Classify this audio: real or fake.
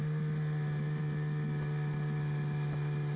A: real